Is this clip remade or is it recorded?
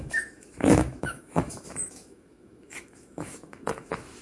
remade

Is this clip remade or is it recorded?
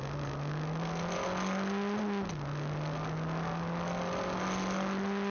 recorded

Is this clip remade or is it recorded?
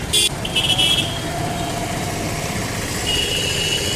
recorded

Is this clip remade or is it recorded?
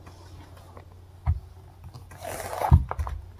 recorded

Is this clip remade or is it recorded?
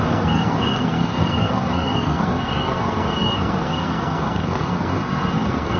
remade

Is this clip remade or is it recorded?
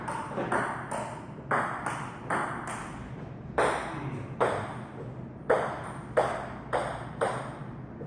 recorded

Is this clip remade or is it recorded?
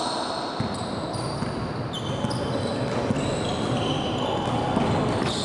recorded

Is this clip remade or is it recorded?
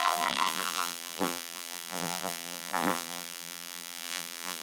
remade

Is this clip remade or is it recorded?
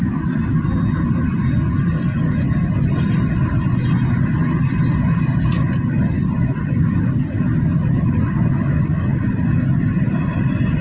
recorded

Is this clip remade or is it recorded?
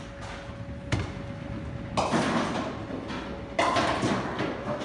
recorded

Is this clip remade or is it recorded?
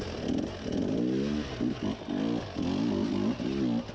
recorded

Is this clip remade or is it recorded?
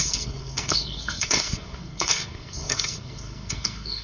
remade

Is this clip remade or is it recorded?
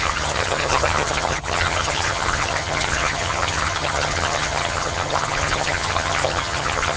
remade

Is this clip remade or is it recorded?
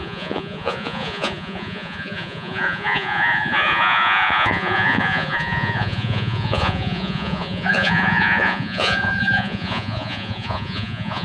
remade